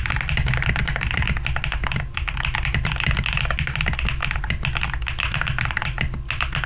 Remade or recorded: recorded